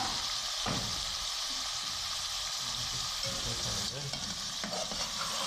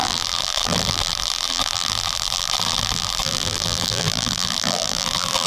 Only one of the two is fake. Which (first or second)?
second